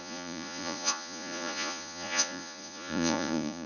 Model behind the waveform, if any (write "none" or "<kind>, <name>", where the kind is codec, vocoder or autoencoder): vocoder, Vocos